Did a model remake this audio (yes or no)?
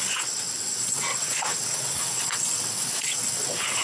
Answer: yes